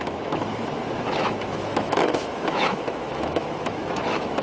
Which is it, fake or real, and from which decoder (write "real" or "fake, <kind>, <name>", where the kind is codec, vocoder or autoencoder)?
fake, autoencoder, DAC-VAE